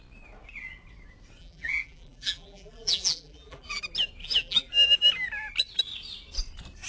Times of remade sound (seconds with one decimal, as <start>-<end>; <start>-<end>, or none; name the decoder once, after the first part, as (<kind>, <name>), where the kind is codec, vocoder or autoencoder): 1.4-3.8 (vocoder, BigVGAN v2); 4.2-4.7